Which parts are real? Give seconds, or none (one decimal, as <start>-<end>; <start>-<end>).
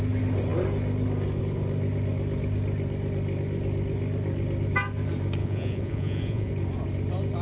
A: 0.0-5.4; 6.5-7.4